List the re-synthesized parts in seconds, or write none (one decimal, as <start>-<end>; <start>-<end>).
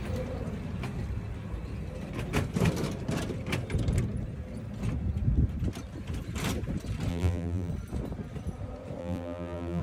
7.1-7.7; 9.0-9.8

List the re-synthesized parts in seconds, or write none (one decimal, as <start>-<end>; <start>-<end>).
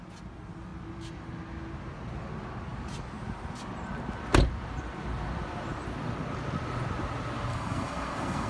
7.5-8.5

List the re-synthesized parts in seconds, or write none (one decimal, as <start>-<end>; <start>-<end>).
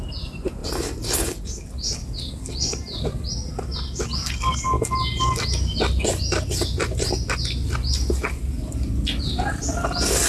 none